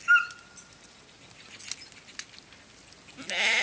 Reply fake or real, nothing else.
real